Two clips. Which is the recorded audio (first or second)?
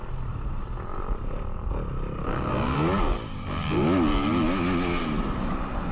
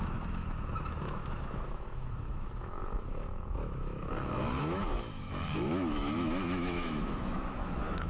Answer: first